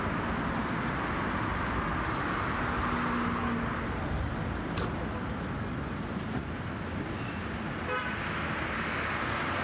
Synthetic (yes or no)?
no